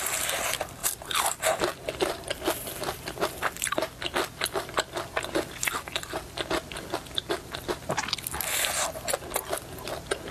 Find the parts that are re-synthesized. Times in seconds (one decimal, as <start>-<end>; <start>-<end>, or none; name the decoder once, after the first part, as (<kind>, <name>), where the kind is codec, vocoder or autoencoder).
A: 0.8-5.5 (vocoder, BigVGAN v2)